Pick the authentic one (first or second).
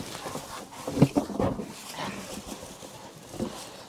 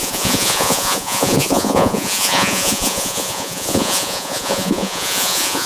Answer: first